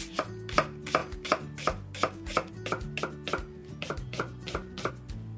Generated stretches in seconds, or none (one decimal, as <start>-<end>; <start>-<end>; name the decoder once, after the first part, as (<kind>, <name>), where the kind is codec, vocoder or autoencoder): 3.6-4.9 (vocoder, BigVGAN v2)